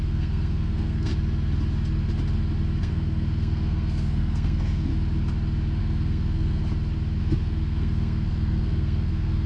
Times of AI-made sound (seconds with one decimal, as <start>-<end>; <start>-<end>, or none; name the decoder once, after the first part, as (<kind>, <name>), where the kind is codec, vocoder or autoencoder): 0.0-1.1 (codec, SNAC); 2.8-4.9; 5.8-6.6; 7.2-9.5